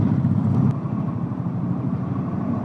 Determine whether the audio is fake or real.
real